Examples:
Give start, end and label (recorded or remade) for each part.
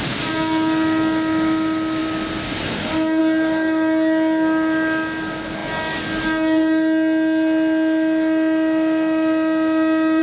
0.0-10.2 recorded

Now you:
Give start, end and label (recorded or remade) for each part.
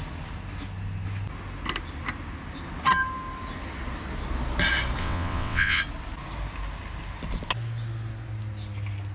0.0-5.0 recorded; 5.0-5.8 remade; 5.8-9.1 recorded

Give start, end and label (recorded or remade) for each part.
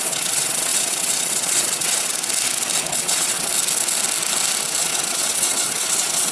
0.0-2.1 remade; 2.1-2.9 recorded; 2.9-3.5 remade; 3.5-4.8 recorded; 4.8-6.3 remade